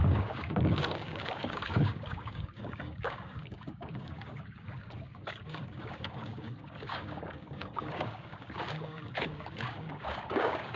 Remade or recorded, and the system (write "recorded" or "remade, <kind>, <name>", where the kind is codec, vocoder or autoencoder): remade, codec, DAC